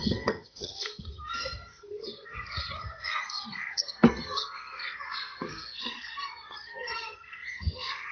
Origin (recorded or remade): remade